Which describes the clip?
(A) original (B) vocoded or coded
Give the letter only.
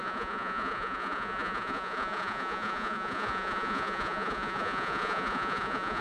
B